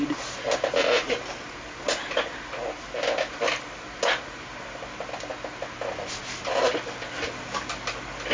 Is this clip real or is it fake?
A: real